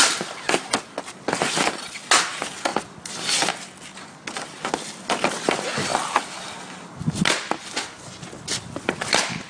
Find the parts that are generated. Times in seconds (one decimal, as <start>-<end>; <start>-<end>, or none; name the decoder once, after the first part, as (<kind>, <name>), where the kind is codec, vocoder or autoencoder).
2.7-3.5 (vocoder, BigVGAN v2); 5.9-7.1